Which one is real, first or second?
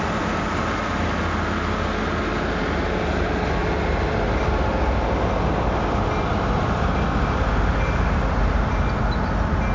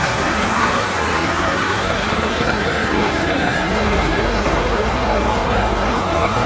first